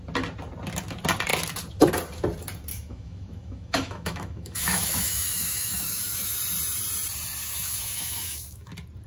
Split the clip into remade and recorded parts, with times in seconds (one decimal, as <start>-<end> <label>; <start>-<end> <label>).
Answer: 0.0-2.7 recorded; 2.7-6.4 remade; 6.4-7.4 recorded; 7.4-8.7 remade; 8.7-9.1 recorded